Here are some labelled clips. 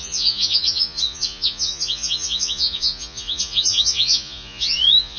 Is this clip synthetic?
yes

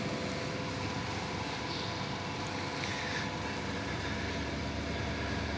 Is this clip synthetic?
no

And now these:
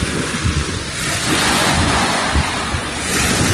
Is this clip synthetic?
yes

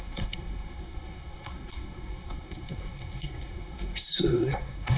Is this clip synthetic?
yes